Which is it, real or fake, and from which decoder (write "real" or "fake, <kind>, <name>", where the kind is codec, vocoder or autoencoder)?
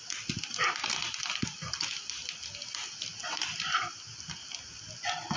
real